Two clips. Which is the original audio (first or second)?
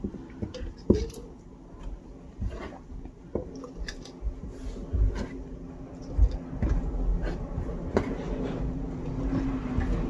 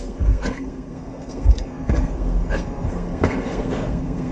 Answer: first